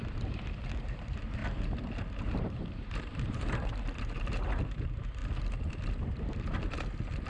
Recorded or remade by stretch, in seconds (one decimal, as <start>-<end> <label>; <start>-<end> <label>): 0.0-1.4 remade; 1.4-2.2 recorded; 2.2-5.2 remade; 5.2-7.3 recorded